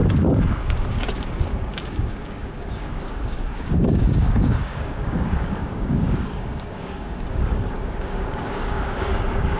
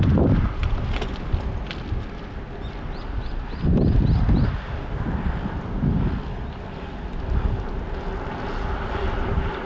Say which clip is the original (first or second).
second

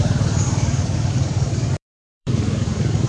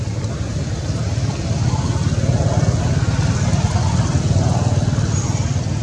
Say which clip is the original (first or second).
second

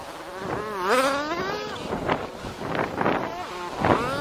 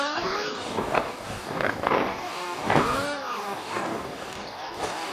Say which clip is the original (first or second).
first